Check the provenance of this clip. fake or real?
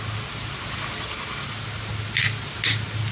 real